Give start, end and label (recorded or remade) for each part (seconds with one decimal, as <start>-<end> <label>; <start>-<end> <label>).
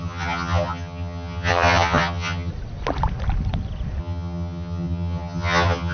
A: 0.0-2.5 remade; 2.5-4.0 recorded; 4.0-5.9 remade